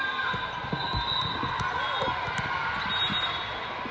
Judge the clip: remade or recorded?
recorded